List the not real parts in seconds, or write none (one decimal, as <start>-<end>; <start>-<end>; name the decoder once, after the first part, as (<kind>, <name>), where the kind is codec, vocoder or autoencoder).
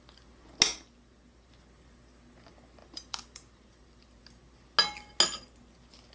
0.7-1.5 (vocoder, BigVGAN v2); 2.8-4.2